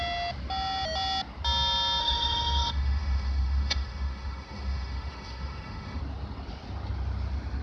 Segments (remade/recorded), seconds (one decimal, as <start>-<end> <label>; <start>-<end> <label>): 0.0-2.0 recorded; 2.0-6.0 remade; 6.0-7.6 recorded

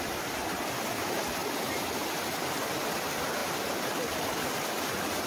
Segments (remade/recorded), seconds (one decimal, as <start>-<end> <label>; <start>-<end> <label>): 0.0-1.4 remade; 1.4-2.4 recorded; 2.4-5.3 remade